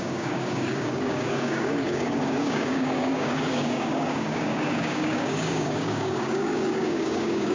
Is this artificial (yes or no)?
yes